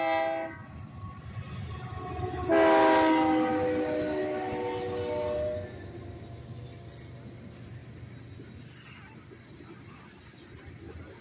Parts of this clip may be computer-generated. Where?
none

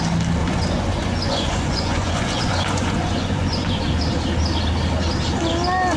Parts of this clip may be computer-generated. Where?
0.4-4.0 (vocoder, Vocos)